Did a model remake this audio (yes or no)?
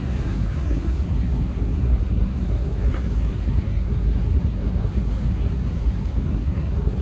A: yes